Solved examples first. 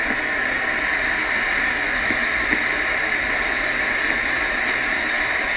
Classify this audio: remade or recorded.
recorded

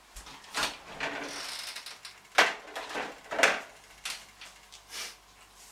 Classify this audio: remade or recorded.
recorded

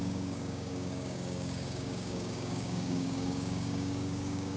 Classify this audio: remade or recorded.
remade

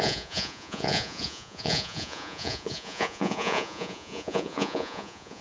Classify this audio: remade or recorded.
remade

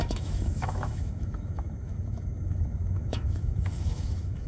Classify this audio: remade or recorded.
remade